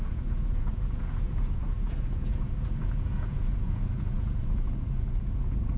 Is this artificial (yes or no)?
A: yes